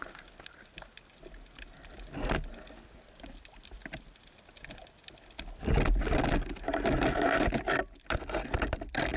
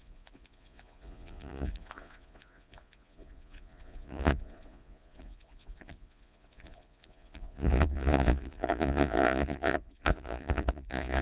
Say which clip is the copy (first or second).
second